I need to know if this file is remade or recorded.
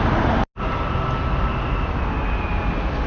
recorded